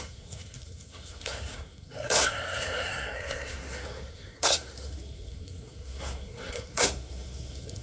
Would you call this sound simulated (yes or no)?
yes